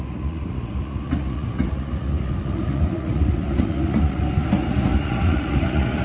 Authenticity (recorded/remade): remade